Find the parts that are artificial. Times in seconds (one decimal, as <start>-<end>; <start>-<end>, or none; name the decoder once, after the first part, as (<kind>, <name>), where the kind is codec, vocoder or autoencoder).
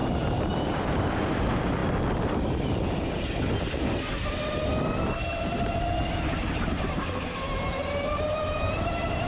0.0-1.8 (vocoder, BigVGAN v2); 6.5-9.3